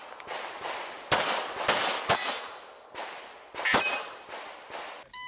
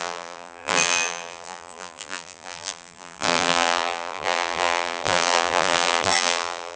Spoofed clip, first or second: second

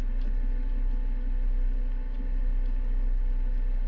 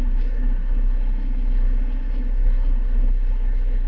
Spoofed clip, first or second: second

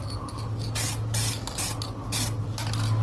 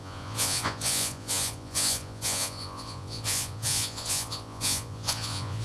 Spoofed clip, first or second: second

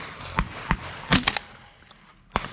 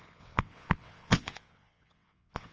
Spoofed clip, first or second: second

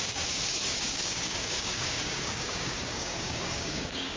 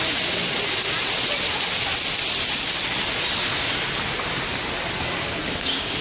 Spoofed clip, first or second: first